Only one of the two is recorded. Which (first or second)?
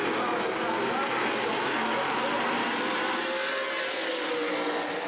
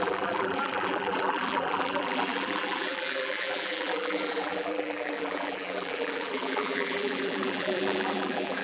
first